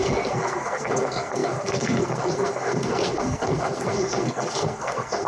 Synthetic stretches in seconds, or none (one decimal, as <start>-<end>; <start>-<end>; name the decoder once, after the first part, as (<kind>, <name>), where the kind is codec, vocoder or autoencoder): 0.0-5.3 (codec, SNAC)